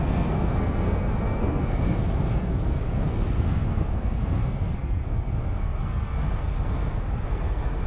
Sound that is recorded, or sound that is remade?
remade